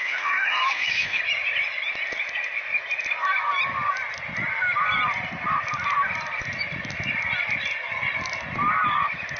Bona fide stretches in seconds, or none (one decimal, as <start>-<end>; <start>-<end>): 1.2-9.4